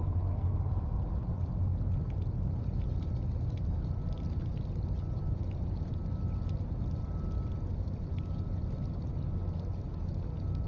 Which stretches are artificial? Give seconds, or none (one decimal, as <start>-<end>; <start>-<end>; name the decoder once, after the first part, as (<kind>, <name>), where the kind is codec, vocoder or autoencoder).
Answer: 0.0-0.6 (codec, SNAC)

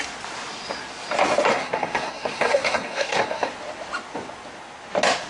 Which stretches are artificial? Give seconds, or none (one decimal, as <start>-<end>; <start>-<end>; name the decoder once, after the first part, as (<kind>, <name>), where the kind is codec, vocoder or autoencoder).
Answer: 1.5-3.5 (codec, SNAC)

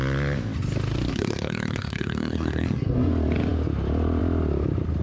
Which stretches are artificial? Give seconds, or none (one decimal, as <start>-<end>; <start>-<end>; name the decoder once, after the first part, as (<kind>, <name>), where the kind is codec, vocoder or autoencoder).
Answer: 1.1-3.1 (codec, SNAC)

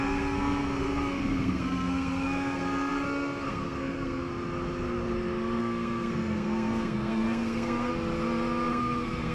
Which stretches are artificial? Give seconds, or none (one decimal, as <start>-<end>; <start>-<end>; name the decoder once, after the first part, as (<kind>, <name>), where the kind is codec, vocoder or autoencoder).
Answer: 0.0-4.3 (codec, SNAC); 5.6-7.9; 8.7-9.3

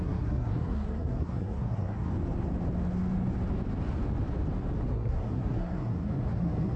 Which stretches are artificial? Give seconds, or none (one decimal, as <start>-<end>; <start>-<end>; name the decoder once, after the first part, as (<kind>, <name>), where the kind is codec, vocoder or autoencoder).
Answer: 0.0-2.1 (codec, SNAC); 4.9-6.8

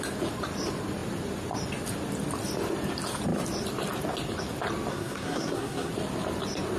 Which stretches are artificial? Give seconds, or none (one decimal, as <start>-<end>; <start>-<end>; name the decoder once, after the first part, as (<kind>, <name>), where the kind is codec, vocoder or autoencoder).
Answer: 4.9-5.9 (codec, SNAC)

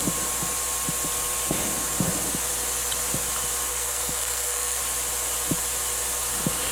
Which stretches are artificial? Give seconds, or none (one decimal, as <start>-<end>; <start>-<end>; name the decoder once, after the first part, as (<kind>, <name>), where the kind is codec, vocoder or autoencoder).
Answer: 3.7-4.8 (codec, SNAC)

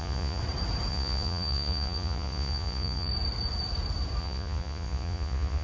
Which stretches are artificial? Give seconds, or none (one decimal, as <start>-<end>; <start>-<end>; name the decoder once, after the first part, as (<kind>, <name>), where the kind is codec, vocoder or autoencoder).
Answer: 0.0-0.4 (vocoder, Vocos); 0.9-3.1; 4.2-5.6